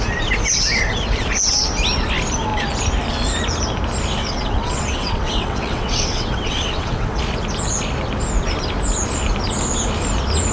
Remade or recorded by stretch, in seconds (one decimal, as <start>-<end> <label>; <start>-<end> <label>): 0.0-4.2 recorded; 4.2-7.2 remade; 7.2-10.5 recorded